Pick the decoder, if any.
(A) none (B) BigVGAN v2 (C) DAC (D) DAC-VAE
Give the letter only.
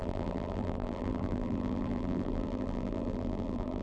B